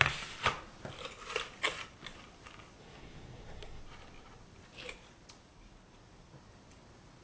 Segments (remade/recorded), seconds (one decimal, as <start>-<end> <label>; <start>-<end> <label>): 0.0-2.8 recorded; 2.8-3.8 remade; 3.8-7.2 recorded